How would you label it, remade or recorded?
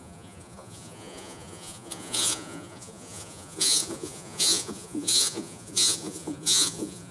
remade